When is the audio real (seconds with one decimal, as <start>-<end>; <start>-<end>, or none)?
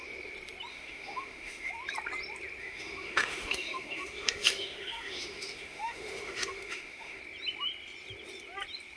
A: 0.0-0.7; 1.7-2.6; 7.2-9.0